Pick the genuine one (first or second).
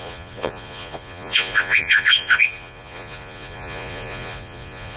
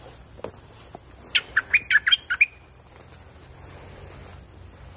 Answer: second